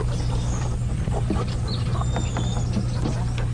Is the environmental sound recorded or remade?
recorded